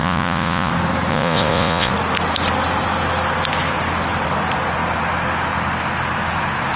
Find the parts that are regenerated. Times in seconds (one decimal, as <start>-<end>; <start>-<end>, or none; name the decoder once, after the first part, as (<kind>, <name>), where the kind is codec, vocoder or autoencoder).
0.0-0.7 (vocoder, Vocos); 1.1-1.9